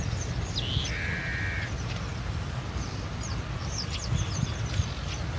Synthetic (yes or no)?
no